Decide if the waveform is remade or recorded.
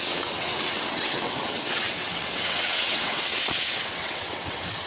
remade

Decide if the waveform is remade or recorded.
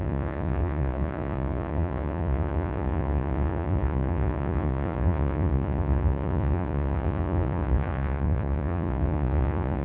remade